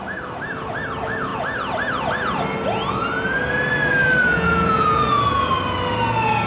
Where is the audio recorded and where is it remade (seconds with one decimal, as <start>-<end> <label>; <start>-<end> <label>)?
0.0-4.2 recorded; 4.2-5.5 remade; 5.5-6.5 recorded